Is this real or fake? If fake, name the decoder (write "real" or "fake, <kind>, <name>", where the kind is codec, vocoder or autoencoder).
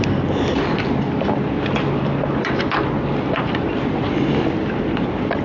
real